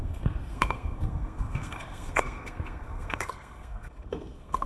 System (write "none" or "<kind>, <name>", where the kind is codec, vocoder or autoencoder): codec, SNAC